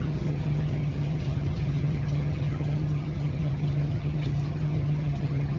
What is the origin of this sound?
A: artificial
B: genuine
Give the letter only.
A